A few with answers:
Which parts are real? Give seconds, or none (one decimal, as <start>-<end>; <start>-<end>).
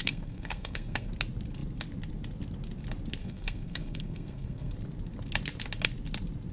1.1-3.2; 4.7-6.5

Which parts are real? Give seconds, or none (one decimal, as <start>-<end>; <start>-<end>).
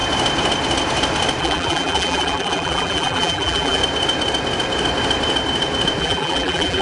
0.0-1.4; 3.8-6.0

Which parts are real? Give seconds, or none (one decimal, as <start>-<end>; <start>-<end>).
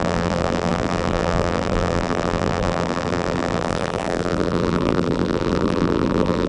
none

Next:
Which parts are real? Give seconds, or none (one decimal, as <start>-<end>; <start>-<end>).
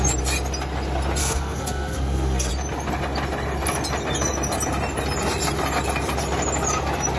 0.0-1.2; 2.5-7.2